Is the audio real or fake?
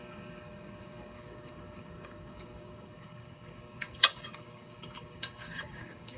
fake